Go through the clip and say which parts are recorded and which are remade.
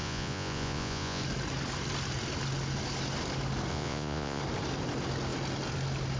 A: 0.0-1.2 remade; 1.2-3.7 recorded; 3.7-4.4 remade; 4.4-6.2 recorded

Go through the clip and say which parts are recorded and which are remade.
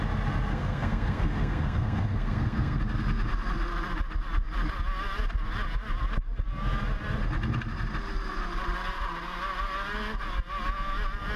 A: 0.0-0.5 recorded; 0.5-2.8 remade; 2.8-11.4 recorded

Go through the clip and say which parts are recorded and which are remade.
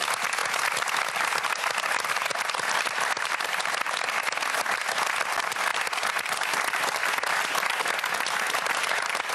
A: 0.0-9.3 recorded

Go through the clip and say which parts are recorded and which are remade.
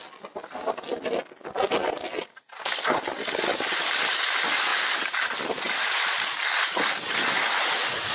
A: 0.0-8.1 recorded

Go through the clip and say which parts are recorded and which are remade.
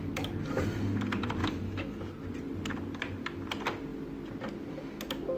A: 0.0-1.4 recorded; 1.4-2.0 remade; 2.0-5.4 recorded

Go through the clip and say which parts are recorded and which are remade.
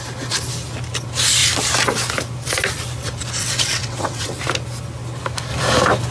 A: 0.0-3.4 recorded; 3.4-4.4 remade; 4.4-6.1 recorded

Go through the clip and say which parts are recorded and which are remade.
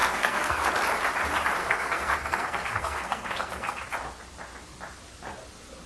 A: 0.0-0.7 remade; 0.7-1.6 recorded; 1.6-3.8 remade; 3.8-5.9 recorded